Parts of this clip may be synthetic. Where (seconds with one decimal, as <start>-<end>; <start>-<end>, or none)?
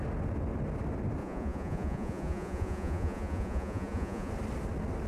1.2-4.3